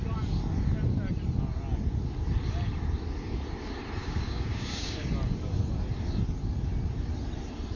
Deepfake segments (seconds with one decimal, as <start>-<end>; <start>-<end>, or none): 4.0-5.1